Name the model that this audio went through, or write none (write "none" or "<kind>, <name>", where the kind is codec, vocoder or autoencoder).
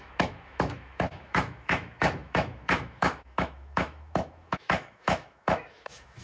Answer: autoencoder, DAC-VAE